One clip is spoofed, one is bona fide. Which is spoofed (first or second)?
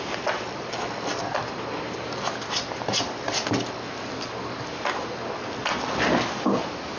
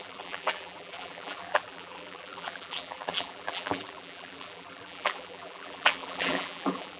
second